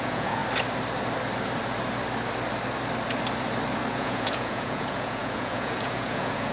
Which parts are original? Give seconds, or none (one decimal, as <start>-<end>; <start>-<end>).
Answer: 0.4-3.9